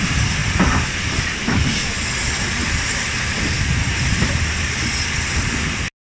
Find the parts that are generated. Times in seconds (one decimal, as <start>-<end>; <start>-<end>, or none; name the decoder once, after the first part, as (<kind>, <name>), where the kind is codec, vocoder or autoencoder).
none